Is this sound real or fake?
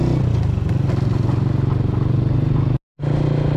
real